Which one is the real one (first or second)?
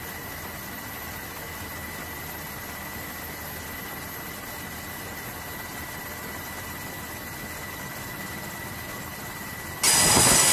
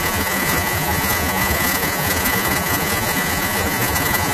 first